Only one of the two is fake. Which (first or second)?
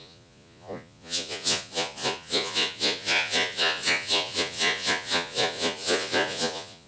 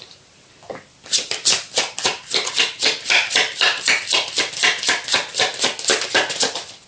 first